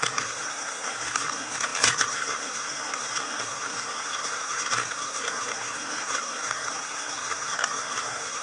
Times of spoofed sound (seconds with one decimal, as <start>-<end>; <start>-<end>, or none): 0.0-8.4